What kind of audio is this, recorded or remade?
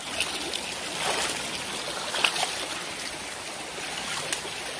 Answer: recorded